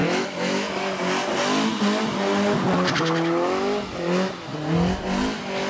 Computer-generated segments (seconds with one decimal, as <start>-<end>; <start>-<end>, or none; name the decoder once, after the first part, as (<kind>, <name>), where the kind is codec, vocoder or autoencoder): 0.0-0.9 (autoencoder, DAC-VAE)